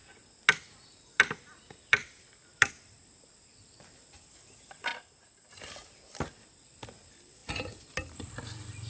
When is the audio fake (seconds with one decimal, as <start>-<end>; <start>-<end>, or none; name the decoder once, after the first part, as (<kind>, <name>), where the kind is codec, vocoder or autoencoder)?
3.3-8.9 (vocoder, BigVGAN v2)